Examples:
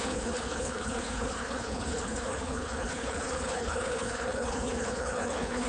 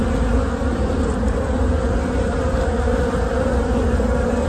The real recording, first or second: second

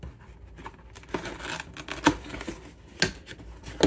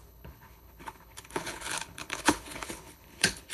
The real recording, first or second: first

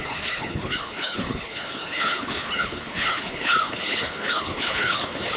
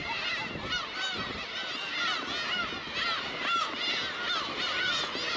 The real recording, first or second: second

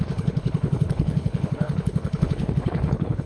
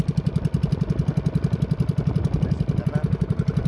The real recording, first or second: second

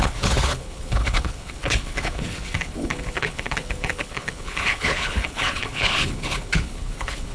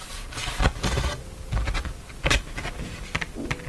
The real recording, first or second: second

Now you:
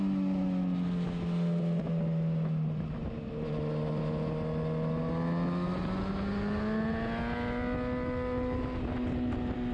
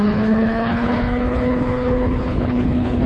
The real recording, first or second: first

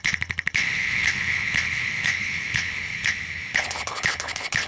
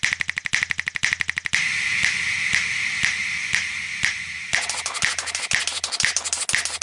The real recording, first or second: second